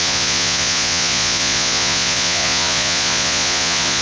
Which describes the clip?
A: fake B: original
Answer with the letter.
A